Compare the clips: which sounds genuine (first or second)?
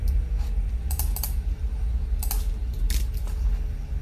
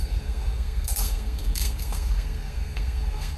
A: first